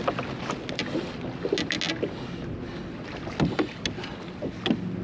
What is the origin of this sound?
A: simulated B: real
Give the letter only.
B